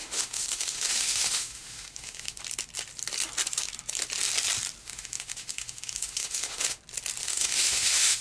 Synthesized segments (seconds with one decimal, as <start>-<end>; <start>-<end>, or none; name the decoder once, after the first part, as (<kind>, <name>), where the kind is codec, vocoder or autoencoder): 0.0-2.4 (autoencoder, DAC-VAE); 4.8-6.8; 7.2-8.2